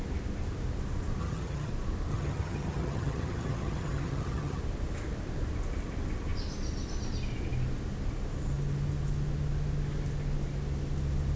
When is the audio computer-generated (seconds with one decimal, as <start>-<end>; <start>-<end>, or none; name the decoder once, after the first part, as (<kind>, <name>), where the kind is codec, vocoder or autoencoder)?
1.2-1.7 (vocoder, HiFi-GAN); 2.1-4.6